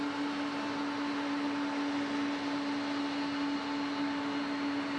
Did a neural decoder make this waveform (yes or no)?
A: no